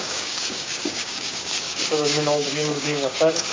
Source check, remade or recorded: remade